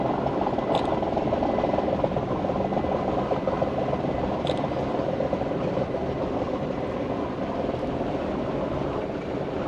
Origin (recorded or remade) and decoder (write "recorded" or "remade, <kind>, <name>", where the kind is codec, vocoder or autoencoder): recorded